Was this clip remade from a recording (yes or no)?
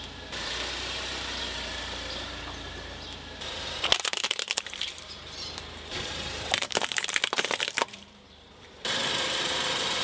yes